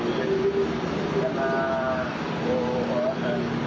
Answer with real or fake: real